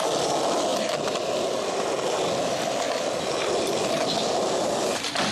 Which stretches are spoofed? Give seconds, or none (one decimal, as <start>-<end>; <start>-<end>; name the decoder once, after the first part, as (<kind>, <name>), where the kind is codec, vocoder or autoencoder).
none